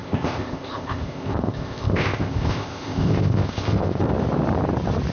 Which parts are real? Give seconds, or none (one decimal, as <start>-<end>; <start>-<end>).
4.0-5.1

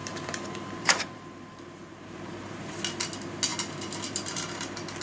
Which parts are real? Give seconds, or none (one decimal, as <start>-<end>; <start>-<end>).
2.8-5.0

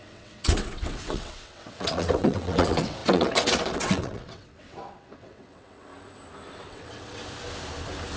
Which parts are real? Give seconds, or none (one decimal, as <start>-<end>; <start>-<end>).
5.9-6.6; 7.2-8.2

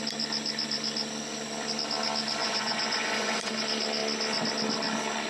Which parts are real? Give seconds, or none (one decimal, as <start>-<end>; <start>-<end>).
0.0-2.4; 3.5-5.3

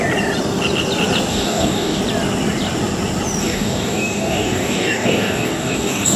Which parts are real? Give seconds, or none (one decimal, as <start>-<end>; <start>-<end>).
0.0-1.3; 2.0-3.4

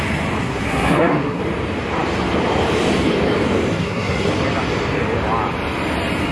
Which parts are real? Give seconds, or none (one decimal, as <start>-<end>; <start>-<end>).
0.0-0.4; 1.4-3.8; 4.3-6.3